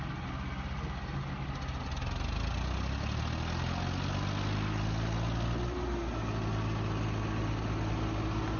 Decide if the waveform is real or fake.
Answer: real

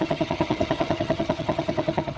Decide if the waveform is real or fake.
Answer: fake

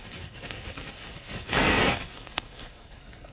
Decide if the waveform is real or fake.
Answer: fake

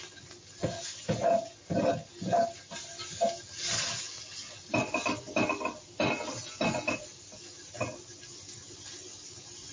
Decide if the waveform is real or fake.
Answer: real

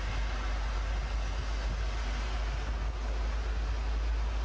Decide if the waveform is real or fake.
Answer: real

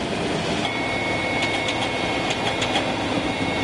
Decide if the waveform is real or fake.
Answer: real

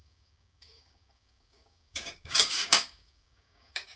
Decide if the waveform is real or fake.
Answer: fake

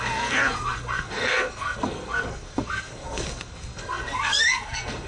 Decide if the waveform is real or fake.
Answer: fake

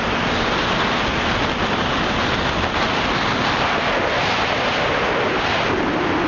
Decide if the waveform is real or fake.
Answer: real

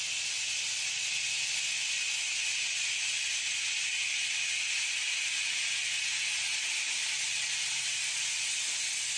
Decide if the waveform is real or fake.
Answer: real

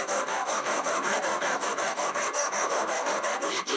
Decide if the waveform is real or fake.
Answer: fake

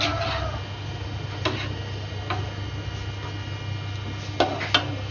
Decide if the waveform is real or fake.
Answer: real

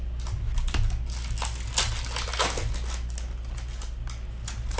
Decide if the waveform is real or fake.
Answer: real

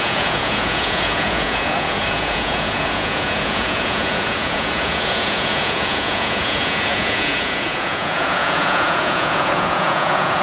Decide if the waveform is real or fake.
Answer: fake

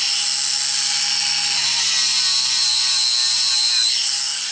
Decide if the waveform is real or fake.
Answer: real